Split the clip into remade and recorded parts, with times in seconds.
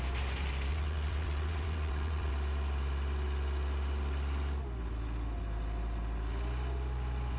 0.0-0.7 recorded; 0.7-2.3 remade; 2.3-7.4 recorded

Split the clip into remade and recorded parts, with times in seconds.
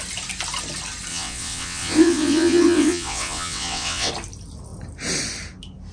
0.0-1.1 recorded; 1.1-4.1 remade; 4.1-5.9 recorded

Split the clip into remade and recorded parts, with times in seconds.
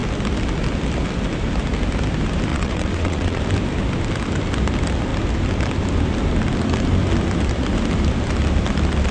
0.0-2.5 recorded; 2.5-3.4 remade; 3.4-9.1 recorded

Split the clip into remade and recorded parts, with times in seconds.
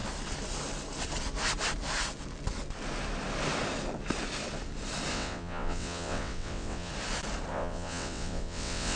0.0-5.1 recorded; 5.1-6.9 remade; 6.9-7.5 recorded; 7.5-9.0 remade